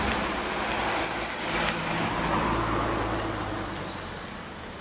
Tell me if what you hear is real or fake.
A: real